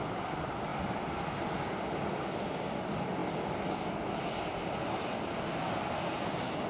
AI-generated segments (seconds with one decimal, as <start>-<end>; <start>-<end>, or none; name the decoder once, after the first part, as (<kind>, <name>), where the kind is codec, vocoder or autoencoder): none